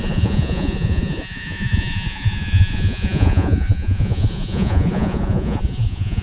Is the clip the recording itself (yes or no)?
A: no